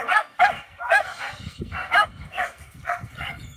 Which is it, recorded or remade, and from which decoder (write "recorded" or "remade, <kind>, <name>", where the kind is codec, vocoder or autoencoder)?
remade, codec, SNAC